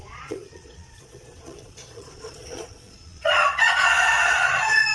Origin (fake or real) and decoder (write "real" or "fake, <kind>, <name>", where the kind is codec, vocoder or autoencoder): fake, vocoder, Vocos